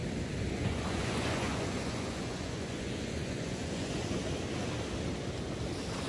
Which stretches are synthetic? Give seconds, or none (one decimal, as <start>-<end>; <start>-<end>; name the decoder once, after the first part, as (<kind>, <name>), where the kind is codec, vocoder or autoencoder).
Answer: 0.5-4.2 (vocoder, Vocos)